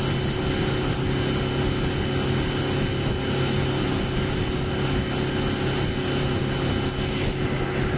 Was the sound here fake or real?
real